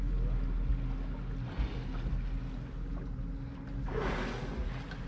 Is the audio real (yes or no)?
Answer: yes